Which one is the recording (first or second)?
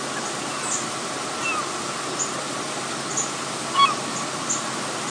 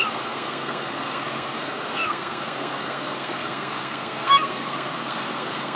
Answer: first